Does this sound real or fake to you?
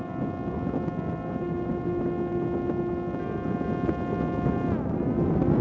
real